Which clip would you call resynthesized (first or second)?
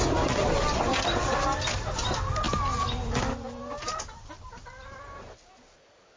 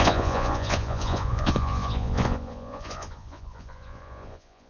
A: second